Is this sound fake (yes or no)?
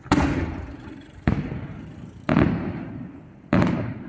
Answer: yes